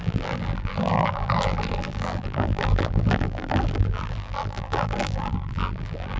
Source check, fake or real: fake